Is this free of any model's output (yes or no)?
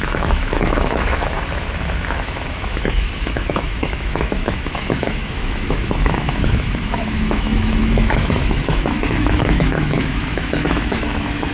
no